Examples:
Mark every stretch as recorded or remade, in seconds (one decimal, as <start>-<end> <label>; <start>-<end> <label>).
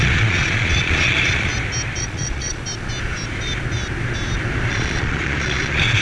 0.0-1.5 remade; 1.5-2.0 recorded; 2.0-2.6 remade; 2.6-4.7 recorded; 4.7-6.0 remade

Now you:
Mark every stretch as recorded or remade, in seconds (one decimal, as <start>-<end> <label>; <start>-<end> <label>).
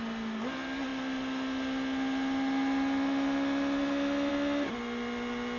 0.0-5.6 recorded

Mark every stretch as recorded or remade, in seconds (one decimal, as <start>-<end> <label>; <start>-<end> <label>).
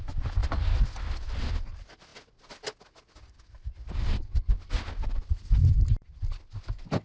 0.0-7.0 recorded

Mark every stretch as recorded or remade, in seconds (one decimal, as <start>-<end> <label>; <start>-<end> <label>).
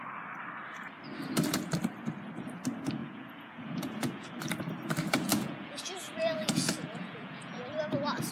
0.0-3.0 recorded; 3.0-4.3 remade; 4.3-5.3 recorded; 5.3-7.6 remade; 7.6-8.3 recorded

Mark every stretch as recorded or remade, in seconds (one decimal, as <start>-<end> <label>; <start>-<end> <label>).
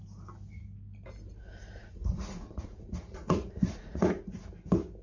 0.0-1.8 recorded; 1.8-4.4 remade; 4.4-5.0 recorded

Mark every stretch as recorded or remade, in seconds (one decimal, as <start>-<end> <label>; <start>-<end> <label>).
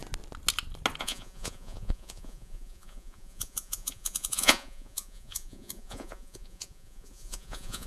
0.0-1.0 recorded; 1.0-7.9 remade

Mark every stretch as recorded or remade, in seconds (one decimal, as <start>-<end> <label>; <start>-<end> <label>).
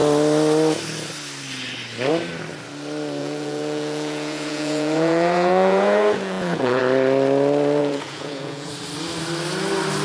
0.0-3.2 recorded; 3.2-6.8 remade; 6.8-7.8 recorded; 7.8-8.7 remade; 8.7-10.0 recorded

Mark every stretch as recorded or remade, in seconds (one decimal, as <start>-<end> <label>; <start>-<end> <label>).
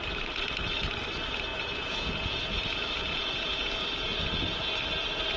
0.0-1.5 recorded; 1.5-4.7 remade; 4.7-5.4 recorded